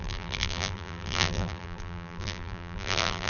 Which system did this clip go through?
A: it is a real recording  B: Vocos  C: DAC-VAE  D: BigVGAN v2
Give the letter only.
D